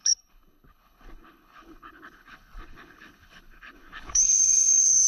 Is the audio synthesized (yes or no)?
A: yes